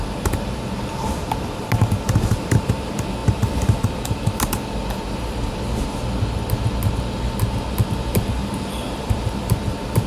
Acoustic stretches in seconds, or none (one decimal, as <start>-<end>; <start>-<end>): 0.0-10.1